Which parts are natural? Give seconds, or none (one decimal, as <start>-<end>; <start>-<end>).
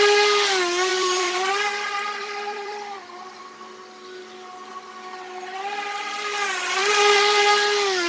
0.0-0.9; 1.5-2.2; 3.4-8.1